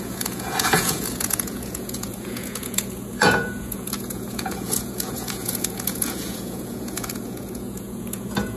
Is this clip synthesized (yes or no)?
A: yes